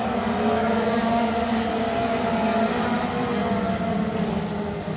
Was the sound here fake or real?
real